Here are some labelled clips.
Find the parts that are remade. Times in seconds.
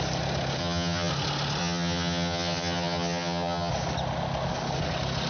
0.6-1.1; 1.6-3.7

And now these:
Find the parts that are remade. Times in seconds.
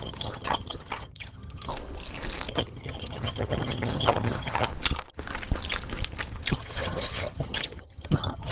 0.0-1.7; 2.5-4.7; 6.5-8.5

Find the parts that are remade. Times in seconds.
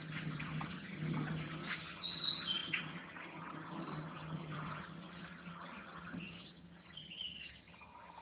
0.0-8.2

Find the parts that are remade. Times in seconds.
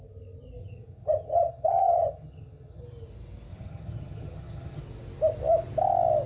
0.6-2.8; 3.5-4.8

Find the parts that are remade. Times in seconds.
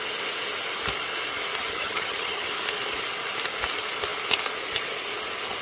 1.6-2.5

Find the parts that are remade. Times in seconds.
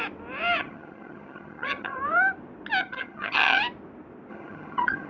0.6-2.0; 2.8-3.6; 4.3-5.1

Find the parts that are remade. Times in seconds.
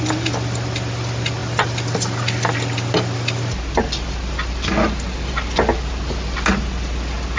none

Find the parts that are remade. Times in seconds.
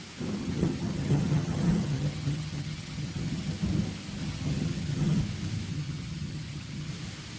0.4-3.5; 4.2-5.2; 5.7-6.9